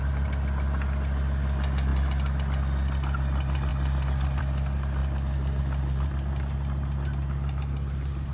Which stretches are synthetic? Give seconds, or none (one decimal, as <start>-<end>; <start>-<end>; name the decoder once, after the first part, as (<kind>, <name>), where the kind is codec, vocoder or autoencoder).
none